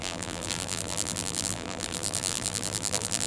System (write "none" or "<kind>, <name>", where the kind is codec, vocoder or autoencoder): vocoder, BigVGAN v2